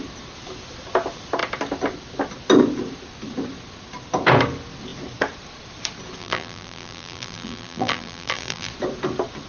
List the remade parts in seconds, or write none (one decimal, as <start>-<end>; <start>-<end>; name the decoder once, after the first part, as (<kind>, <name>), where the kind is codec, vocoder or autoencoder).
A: 6.2-8.7 (vocoder, BigVGAN v2)